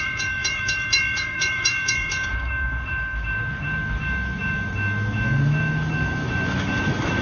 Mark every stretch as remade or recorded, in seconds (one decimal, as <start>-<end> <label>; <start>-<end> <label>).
0.0-7.2 remade